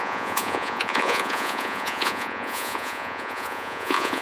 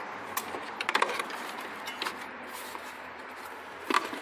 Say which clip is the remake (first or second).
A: first